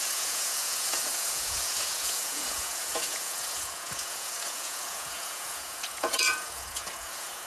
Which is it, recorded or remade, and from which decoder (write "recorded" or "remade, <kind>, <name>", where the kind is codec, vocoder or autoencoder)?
remade, vocoder, Vocos